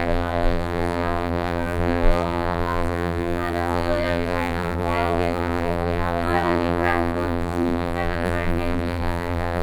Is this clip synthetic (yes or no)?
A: yes